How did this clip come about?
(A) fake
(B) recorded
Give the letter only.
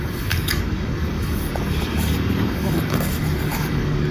A